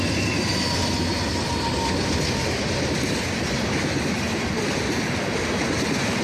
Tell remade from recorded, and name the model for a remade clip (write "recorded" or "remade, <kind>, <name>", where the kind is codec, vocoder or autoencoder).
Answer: recorded